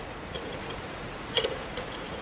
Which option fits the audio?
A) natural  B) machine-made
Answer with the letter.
B